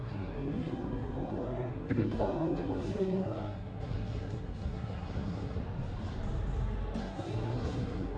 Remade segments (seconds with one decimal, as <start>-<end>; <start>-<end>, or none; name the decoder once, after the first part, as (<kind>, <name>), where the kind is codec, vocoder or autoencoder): 0.0-5.6 (codec, SNAC); 7.0-8.2